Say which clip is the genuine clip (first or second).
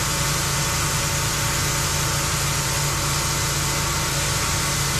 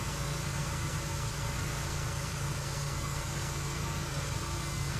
first